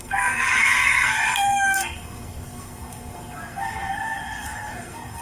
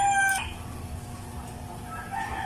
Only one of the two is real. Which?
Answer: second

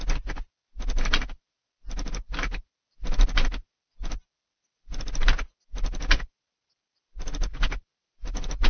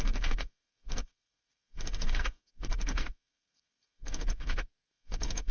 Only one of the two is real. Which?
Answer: first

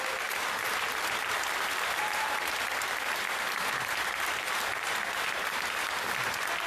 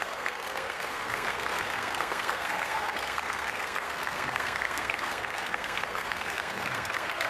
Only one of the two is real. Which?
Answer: first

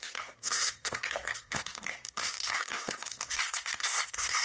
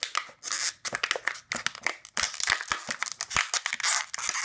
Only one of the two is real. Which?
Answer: second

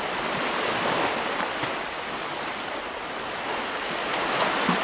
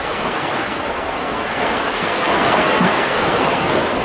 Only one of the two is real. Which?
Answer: first